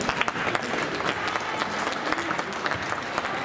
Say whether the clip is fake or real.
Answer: real